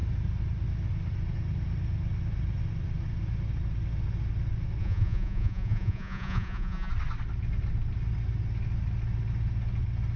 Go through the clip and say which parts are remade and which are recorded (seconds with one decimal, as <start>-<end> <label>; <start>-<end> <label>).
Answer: 0.0-4.8 recorded; 4.8-6.9 remade; 6.9-10.2 recorded

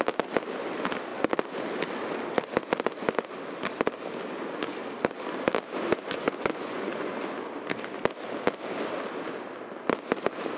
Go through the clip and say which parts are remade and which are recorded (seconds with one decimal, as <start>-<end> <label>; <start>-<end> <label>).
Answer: 0.0-5.9 recorded; 5.9-7.3 remade; 7.3-10.6 recorded

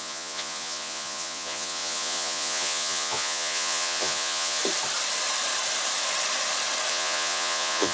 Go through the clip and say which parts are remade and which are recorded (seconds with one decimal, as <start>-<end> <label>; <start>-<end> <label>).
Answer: 0.0-4.6 remade; 4.6-6.9 recorded; 6.9-7.9 remade

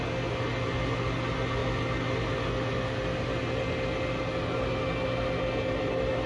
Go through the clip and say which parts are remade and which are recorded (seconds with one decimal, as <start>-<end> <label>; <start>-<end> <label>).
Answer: 0.0-6.3 recorded

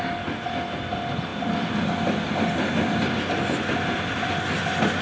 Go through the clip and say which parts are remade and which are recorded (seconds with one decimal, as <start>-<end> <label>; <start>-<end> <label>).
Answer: 0.0-5.0 recorded

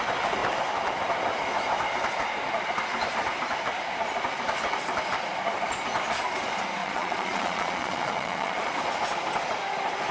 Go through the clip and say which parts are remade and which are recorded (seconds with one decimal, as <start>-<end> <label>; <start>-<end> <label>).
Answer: 0.0-6.8 recorded; 6.8-8.7 remade; 8.7-10.1 recorded

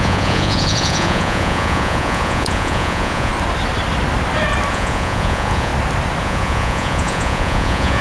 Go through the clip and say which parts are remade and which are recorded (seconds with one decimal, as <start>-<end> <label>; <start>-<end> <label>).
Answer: 0.0-3.3 remade; 3.3-4.7 recorded; 4.7-5.7 remade; 5.7-6.2 recorded; 6.2-8.0 remade